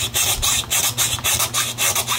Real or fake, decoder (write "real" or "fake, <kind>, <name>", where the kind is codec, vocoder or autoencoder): real